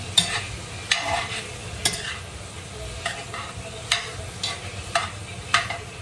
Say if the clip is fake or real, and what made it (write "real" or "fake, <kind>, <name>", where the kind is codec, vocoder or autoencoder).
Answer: real